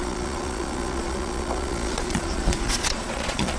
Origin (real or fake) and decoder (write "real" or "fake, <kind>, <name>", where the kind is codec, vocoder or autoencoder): fake, vocoder, Vocos